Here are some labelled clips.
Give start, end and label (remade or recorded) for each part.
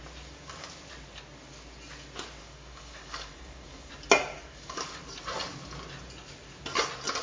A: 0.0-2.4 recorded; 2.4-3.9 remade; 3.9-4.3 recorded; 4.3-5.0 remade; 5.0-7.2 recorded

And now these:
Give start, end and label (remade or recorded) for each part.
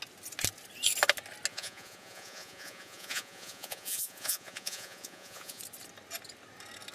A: 0.0-1.5 recorded; 1.5-5.6 remade; 5.6-6.9 recorded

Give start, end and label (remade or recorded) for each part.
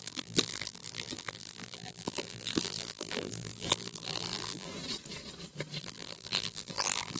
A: 0.0-4.7 remade; 4.7-5.8 recorded; 5.8-7.2 remade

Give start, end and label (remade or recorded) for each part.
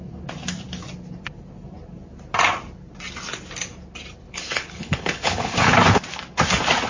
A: 0.0-4.2 recorded; 4.2-5.7 remade; 5.7-6.9 recorded